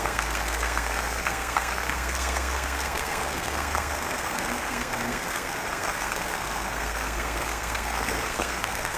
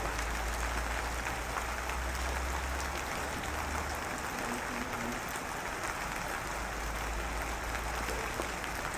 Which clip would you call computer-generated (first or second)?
first